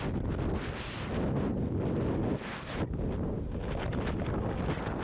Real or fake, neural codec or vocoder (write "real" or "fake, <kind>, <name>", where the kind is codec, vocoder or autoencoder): real